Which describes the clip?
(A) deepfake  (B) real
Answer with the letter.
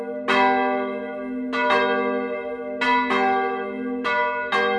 B